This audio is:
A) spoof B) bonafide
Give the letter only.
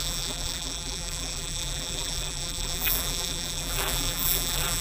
A